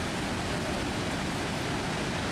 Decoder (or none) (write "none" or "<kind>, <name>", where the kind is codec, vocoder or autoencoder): none